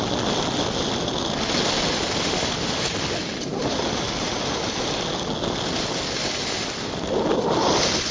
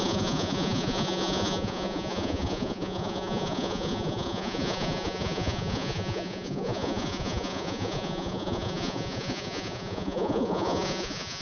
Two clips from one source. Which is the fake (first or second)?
second